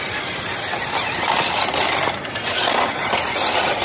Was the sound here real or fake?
real